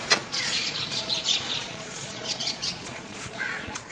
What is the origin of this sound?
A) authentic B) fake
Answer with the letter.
B